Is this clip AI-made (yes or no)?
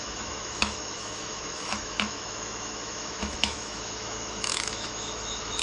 yes